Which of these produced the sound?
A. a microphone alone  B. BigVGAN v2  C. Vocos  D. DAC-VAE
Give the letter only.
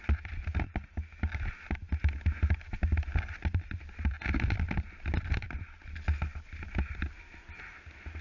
A